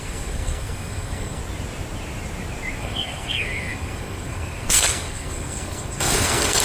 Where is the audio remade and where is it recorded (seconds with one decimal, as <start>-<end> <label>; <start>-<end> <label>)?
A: 0.0-1.4 remade; 1.4-2.8 recorded; 2.8-6.6 remade